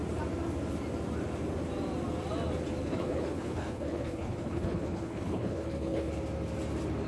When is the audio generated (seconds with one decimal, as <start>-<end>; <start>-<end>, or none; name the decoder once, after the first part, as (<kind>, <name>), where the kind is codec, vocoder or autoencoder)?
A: 2.8-6.1 (codec, HILCodec)

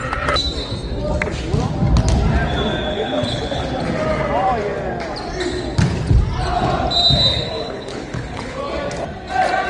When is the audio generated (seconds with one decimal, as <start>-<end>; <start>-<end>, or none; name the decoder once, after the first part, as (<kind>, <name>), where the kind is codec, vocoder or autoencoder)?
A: 2.9-3.7 (codec, HILCodec); 7.3-8.6

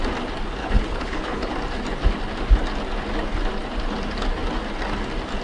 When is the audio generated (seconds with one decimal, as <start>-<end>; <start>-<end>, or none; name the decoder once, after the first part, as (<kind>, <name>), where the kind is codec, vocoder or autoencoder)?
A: 0.6-1.5 (codec, HILCodec)

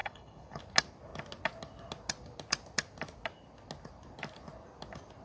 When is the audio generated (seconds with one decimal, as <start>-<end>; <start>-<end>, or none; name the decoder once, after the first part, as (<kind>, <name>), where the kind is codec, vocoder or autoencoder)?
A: 0.0-0.6 (codec, HILCodec)

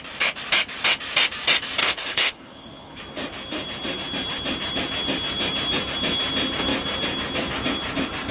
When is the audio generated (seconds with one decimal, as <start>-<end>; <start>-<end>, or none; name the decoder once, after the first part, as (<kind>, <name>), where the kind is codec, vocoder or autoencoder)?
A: 1.8-3.0 (codec, HILCodec)